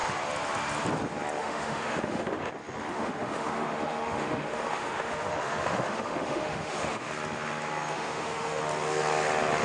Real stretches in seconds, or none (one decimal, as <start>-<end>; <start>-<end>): 0.0-1.4; 2.5-2.9; 7.1-7.9; 8.6-9.6